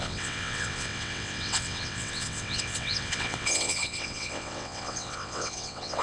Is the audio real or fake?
fake